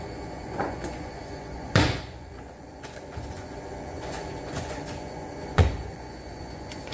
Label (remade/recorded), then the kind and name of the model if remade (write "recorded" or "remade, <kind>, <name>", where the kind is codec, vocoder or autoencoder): remade, vocoder, Vocos